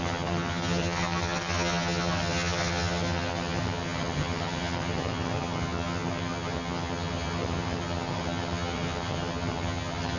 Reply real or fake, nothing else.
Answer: fake